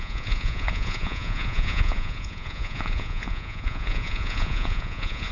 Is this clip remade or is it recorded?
remade